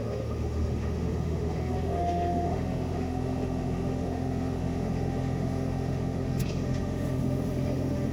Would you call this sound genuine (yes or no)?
no